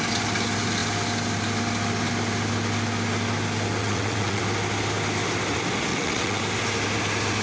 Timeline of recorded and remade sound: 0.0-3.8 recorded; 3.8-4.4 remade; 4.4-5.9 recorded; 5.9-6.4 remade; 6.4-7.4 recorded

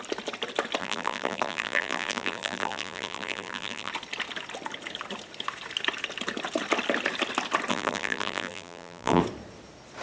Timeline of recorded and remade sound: 0.0-0.8 recorded; 0.8-3.9 remade; 3.9-7.7 recorded; 7.7-9.2 remade; 9.2-10.0 recorded

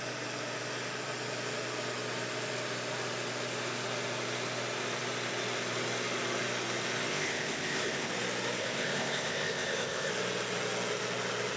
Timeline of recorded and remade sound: 0.0-7.1 recorded; 7.1-8.1 remade; 8.1-8.6 recorded; 8.6-10.1 remade; 10.1-11.6 recorded

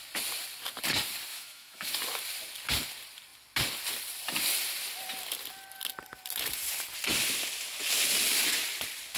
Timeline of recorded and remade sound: 0.0-1.3 recorded; 1.3-1.9 remade; 1.9-9.2 recorded

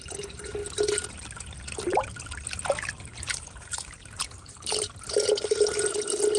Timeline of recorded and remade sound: 0.0-3.1 recorded; 3.1-5.0 remade; 5.0-6.4 recorded

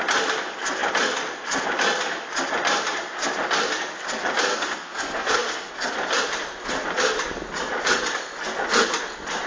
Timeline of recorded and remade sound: 0.0-4.5 recorded; 4.5-5.7 remade; 5.7-9.5 recorded

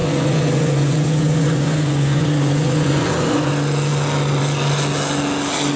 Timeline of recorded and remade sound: 0.0-3.5 remade; 3.5-5.8 recorded